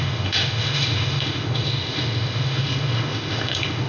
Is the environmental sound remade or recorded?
remade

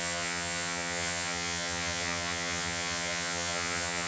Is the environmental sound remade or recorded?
remade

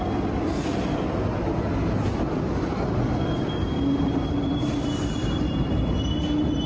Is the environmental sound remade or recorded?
recorded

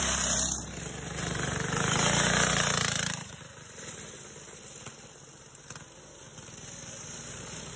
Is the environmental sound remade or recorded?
recorded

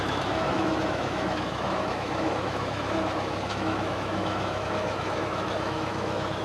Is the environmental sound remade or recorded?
remade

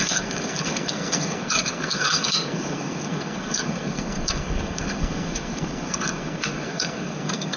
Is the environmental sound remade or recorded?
remade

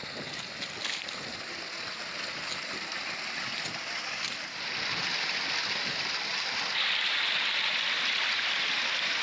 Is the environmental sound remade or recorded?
recorded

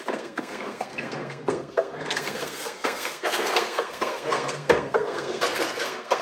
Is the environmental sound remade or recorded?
remade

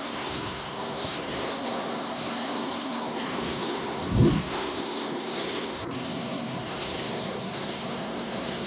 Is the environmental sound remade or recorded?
remade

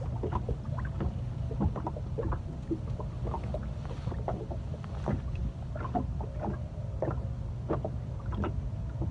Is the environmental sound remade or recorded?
recorded